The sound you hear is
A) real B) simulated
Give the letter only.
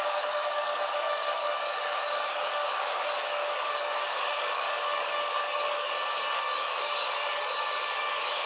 B